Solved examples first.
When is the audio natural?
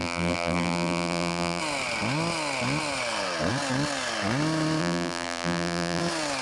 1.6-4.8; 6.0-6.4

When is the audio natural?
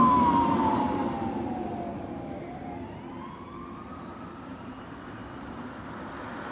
1.0-4.5; 5.2-6.5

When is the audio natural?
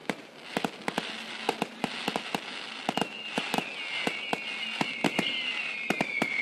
0.0-6.4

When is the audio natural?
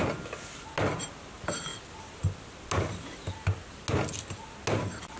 0.0-5.2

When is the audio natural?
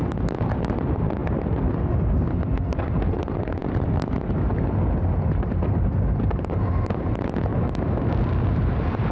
0.0-9.1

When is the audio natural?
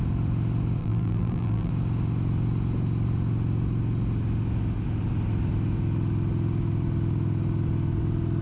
0.0-0.8; 1.7-8.4